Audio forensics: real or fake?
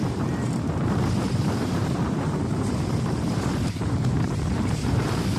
fake